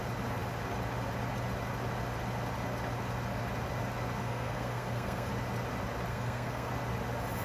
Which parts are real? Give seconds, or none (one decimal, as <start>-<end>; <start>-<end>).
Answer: 0.0-4.2; 5.3-6.1; 6.7-7.4